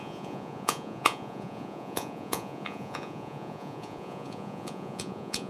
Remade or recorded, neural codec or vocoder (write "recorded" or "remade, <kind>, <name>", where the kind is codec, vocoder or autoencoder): remade, vocoder, Vocos